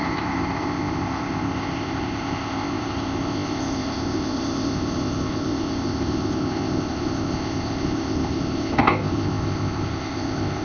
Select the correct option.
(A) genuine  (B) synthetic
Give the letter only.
B